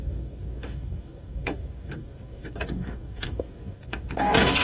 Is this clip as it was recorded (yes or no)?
no